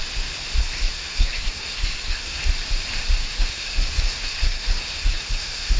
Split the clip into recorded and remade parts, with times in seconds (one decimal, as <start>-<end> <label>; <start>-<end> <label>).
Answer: 0.0-0.6 recorded; 0.6-2.4 remade; 2.4-3.2 recorded; 3.2-5.8 remade